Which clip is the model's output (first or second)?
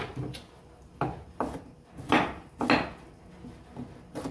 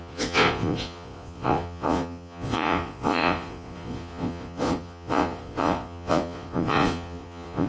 second